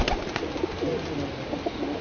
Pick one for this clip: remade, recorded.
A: recorded